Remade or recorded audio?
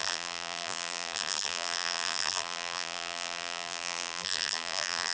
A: remade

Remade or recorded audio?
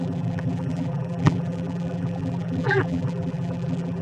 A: remade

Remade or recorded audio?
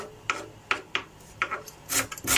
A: recorded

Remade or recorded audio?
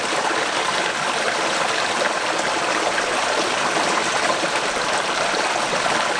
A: remade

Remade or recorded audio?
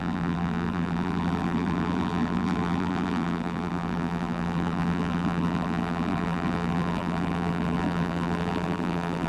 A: remade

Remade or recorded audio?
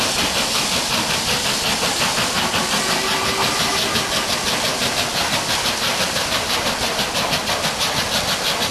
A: recorded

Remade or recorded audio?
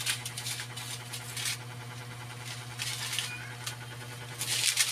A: recorded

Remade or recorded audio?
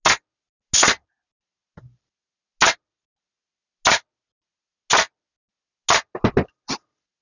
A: recorded